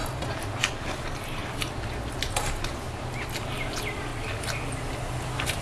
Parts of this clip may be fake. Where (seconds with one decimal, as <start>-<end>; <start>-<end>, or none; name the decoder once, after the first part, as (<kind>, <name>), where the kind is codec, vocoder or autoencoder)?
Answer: none